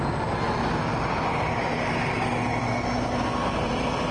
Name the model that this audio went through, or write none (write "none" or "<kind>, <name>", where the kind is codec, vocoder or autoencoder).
none